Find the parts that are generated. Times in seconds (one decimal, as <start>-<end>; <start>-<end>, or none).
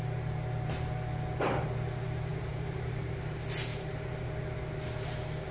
2.3-3.3; 3.7-4.3